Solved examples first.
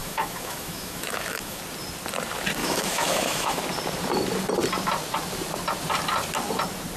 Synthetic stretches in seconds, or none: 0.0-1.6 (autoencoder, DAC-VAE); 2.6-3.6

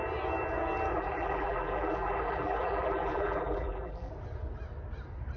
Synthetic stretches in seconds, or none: 0.9-4.1 (vocoder, BigVGAN v2)

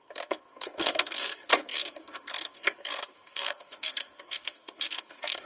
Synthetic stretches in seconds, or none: 0.0-5.5 (codec, SNAC)

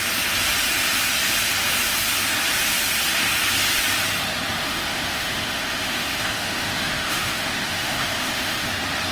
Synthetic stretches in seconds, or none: 4.6-8.7 (autoencoder, DAC-VAE)

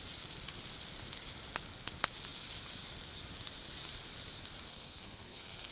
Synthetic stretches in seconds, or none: 4.7-5.7 (codec, SNAC)

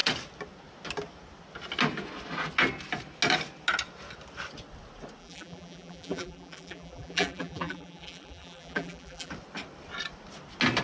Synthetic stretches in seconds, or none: 5.2-9.3 (vocoder, BigVGAN v2)